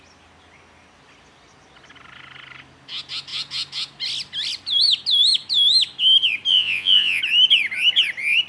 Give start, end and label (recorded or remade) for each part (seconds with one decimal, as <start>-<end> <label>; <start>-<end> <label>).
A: 0.0-6.5 recorded; 6.5-7.2 remade; 7.2-8.5 recorded